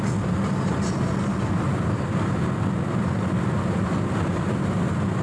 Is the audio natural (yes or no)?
yes